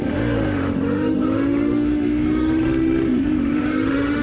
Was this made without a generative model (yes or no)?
no